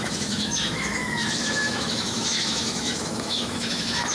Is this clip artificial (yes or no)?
yes